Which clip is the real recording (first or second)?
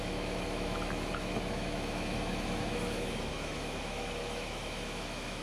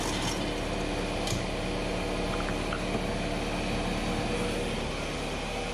second